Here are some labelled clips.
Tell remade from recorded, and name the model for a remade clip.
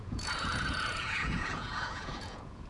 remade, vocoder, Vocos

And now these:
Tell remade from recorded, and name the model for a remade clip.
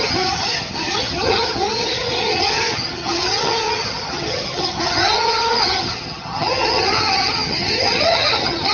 remade, vocoder, HiFi-GAN